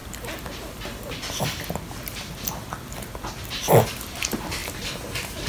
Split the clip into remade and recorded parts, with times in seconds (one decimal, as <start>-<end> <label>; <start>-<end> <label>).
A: 0.0-4.6 recorded; 4.6-5.5 remade